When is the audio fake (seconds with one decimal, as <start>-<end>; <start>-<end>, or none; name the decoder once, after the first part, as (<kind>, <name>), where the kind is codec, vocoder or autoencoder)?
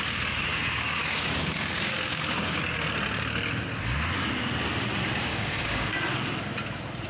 0.5-2.6 (codec, DAC); 5.3-5.9